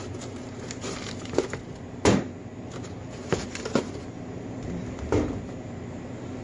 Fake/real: real